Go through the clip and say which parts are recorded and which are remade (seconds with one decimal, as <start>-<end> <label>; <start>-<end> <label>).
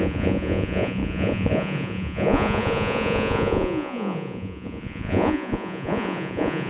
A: 0.0-6.7 remade